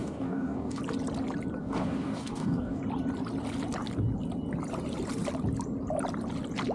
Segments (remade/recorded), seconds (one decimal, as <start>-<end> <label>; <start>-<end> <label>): 0.0-0.8 remade; 0.8-1.6 recorded; 1.6-2.8 remade; 2.8-6.7 recorded

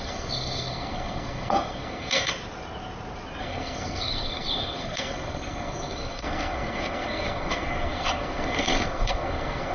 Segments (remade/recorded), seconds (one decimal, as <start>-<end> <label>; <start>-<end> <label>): 0.0-2.3 remade; 2.3-3.4 recorded; 3.4-9.7 remade

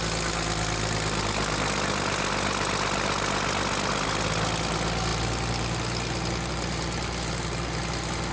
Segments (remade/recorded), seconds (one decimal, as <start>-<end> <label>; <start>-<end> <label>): 0.0-8.3 recorded

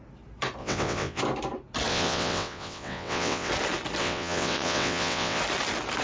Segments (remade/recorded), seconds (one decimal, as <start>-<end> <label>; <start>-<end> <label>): 0.0-0.6 recorded; 0.6-1.2 remade; 1.2-1.9 recorded; 1.9-3.5 remade; 3.5-4.0 recorded; 4.0-5.4 remade; 5.4-6.0 recorded